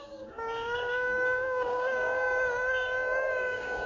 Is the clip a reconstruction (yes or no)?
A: yes